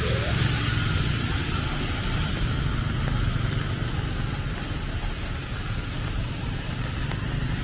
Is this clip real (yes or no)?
yes